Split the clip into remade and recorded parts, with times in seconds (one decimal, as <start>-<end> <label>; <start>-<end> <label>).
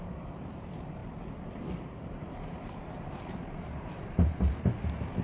0.0-5.2 remade